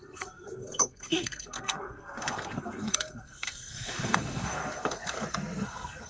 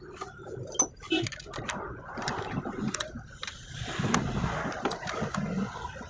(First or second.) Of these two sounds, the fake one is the first